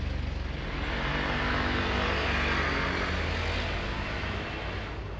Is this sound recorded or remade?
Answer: recorded